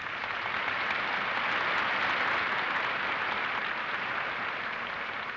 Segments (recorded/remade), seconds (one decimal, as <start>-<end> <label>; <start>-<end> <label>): 0.0-5.4 recorded